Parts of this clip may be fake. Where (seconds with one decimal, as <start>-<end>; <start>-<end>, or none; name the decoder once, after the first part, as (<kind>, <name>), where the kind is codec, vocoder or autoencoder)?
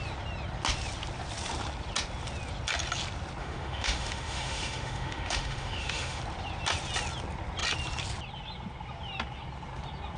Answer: 3.4-6.2 (autoencoder, DAC-VAE)